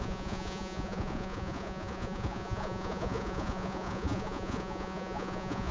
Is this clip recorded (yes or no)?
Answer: no